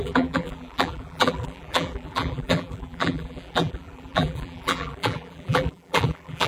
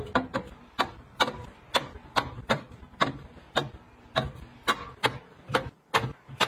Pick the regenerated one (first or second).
first